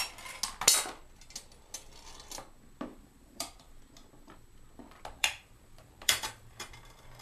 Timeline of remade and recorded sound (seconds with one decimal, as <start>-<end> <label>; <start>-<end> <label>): 0.0-2.9 recorded; 2.9-3.8 remade; 3.8-5.2 recorded; 5.2-7.2 remade